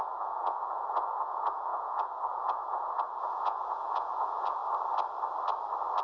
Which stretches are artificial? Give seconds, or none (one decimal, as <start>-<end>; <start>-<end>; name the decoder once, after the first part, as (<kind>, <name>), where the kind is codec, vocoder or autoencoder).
0.0-4.6 (vocoder, Vocos)